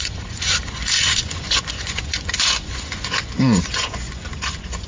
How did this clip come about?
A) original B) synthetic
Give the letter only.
B